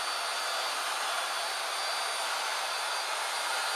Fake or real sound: real